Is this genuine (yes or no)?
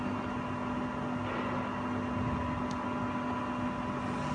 yes